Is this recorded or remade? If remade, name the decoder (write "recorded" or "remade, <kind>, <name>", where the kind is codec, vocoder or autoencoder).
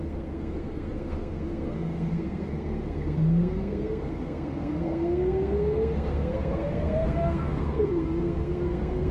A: remade, codec, SNAC